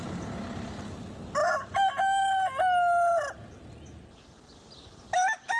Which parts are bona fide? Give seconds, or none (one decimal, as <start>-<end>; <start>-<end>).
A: 0.0-5.6